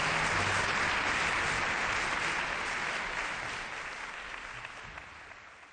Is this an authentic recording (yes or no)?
yes